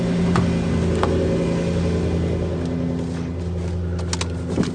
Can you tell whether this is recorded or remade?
recorded